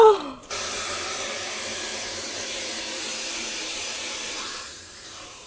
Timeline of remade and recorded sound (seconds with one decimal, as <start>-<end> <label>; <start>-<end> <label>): 0.0-5.5 remade

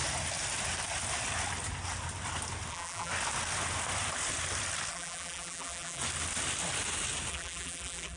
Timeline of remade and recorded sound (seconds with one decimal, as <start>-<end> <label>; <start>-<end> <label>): 0.0-2.7 recorded; 2.7-3.1 remade; 3.1-4.9 recorded; 4.9-6.0 remade; 6.0-7.3 recorded; 7.3-8.2 remade